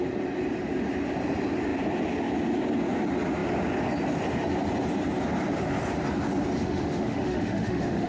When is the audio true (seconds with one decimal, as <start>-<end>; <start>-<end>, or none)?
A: 0.0-6.6